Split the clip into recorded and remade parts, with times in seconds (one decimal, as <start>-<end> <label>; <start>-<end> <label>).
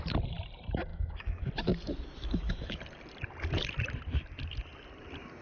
0.0-0.9 recorded; 0.9-1.5 remade; 1.5-2.2 recorded; 2.2-2.8 remade; 2.8-5.4 recorded